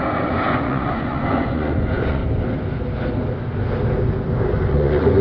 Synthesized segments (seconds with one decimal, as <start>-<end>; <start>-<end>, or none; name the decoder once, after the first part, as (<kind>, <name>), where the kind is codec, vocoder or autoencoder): 0.0-2.2 (vocoder, Vocos); 4.7-5.2